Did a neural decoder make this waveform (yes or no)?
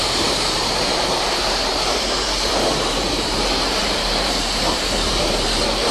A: yes